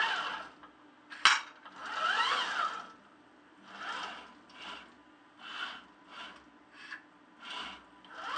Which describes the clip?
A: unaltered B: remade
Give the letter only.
A